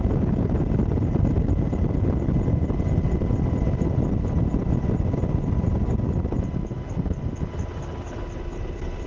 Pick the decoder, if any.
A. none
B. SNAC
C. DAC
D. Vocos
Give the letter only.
A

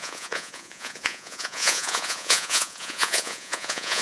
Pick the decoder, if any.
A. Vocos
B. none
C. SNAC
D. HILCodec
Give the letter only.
A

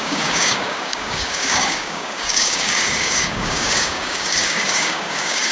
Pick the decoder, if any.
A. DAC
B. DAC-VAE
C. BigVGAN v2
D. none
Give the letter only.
A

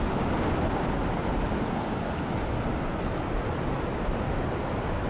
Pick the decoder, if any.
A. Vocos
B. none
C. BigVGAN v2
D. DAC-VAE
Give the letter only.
B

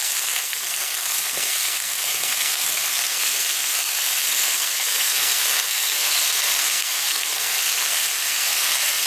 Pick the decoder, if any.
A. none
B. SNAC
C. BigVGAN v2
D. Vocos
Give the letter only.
B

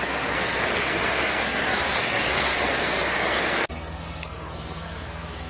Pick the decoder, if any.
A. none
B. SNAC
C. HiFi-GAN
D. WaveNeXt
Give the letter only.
B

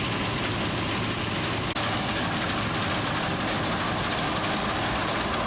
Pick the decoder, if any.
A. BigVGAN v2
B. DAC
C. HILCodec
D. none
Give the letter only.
D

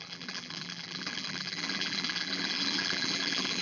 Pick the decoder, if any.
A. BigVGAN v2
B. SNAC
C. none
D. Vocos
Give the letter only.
A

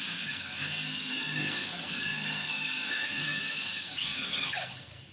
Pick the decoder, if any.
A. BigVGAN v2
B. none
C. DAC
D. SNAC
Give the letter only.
D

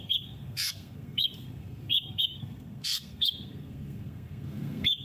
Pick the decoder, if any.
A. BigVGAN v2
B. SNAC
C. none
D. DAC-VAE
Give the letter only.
B